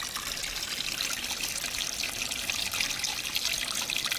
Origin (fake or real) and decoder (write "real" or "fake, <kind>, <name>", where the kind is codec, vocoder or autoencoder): real